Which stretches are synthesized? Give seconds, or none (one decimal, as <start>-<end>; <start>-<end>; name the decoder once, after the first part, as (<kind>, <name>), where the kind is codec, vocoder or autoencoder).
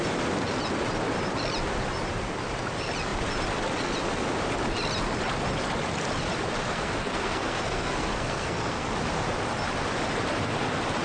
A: 6.7-8.9 (codec, SNAC)